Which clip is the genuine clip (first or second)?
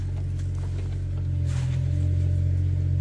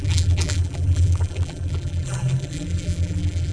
first